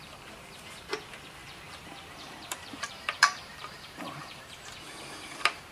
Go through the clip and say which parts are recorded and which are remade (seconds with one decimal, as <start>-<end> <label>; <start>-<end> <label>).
0.0-1.4 recorded; 1.4-4.4 remade; 4.4-5.7 recorded